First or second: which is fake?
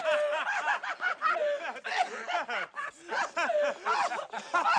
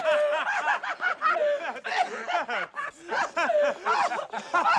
first